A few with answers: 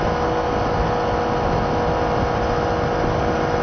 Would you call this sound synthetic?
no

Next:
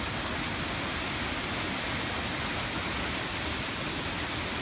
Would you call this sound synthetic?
no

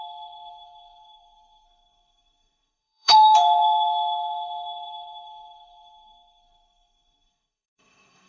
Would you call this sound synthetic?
yes